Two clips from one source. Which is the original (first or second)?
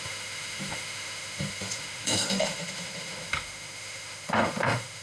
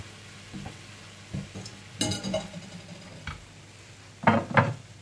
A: second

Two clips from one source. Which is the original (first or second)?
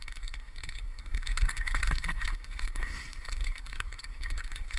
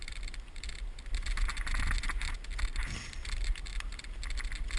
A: second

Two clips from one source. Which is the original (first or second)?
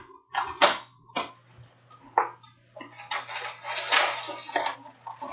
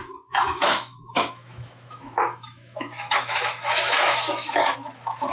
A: first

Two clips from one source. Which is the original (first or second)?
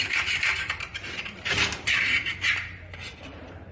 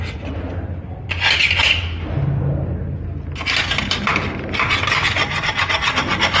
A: second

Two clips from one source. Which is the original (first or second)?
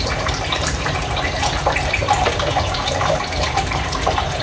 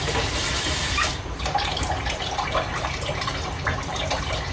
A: second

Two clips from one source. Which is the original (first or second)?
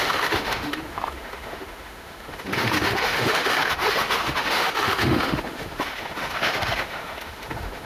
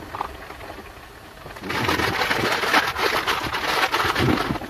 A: second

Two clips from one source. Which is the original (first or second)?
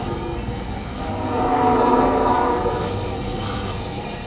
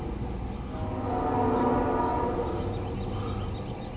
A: second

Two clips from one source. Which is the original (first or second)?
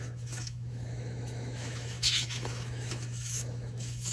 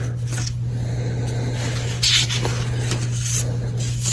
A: second